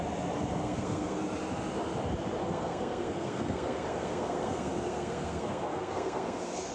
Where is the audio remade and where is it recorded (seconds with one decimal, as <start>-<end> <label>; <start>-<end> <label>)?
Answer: 0.0-0.6 recorded; 0.6-1.2 remade; 1.2-2.4 recorded; 2.4-6.7 remade